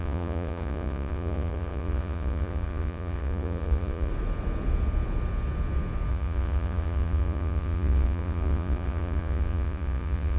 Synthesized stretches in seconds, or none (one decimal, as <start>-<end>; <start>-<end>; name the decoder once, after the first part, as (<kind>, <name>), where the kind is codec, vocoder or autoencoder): 0.0-4.1 (vocoder, Vocos); 6.1-10.4

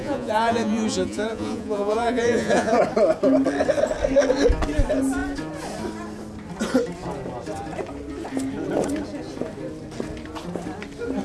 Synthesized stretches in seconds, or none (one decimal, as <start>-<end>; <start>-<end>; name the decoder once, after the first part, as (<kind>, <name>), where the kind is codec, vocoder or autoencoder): 0.0-2.8 (vocoder, Vocos)

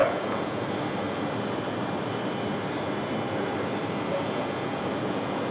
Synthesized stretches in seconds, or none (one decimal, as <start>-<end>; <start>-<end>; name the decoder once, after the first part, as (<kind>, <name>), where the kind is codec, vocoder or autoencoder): 0.0-0.6 (vocoder, Vocos); 4.1-5.5